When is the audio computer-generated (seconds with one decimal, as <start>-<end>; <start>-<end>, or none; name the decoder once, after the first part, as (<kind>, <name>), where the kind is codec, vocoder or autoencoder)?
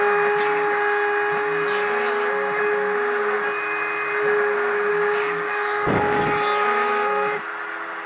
4.9-6.2 (codec, DAC)